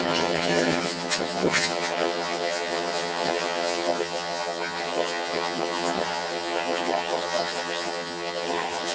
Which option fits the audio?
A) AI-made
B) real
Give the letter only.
A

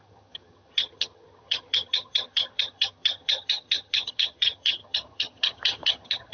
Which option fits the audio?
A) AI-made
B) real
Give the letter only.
A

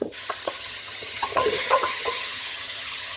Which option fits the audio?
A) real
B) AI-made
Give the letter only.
B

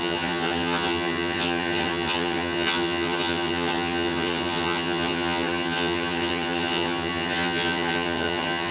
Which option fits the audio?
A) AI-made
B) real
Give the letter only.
A